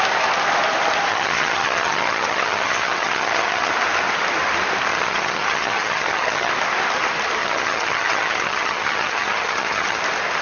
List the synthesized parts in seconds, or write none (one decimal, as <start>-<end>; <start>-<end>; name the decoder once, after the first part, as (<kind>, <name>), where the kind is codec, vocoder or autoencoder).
1.1-3.7 (vocoder, HiFi-GAN); 4.9-6.5; 7.4-10.0